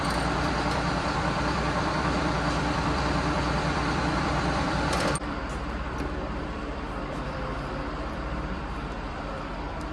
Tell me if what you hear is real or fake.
fake